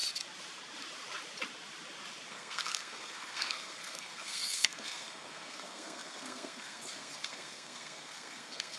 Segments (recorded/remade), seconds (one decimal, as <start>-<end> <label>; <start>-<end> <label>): 0.0-2.3 recorded; 2.3-8.8 remade

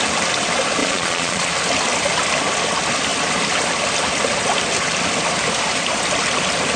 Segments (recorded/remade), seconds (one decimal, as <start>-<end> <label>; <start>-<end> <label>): 0.0-0.8 recorded; 0.8-1.5 remade; 1.5-6.8 recorded

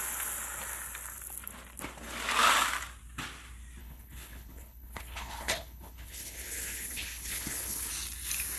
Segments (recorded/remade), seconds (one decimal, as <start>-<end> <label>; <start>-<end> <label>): 0.0-3.8 recorded; 3.8-7.9 remade; 7.9-8.6 recorded

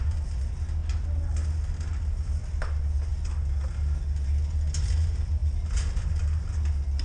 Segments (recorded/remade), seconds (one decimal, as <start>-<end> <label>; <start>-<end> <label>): 0.0-7.0 recorded

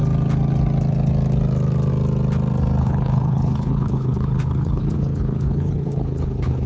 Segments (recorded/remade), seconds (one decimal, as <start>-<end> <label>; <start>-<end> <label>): 0.0-2.8 recorded; 2.8-6.7 remade

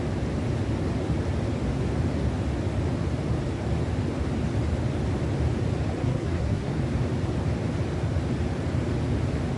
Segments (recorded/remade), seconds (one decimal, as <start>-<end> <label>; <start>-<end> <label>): 0.0-6.0 recorded; 6.0-6.7 remade; 6.7-9.6 recorded

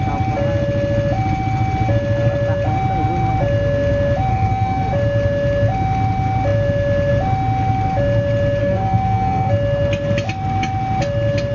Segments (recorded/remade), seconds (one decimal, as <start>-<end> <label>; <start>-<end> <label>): 0.0-4.3 recorded; 4.3-4.9 remade; 4.9-8.6 recorded; 8.6-9.5 remade; 9.5-11.5 recorded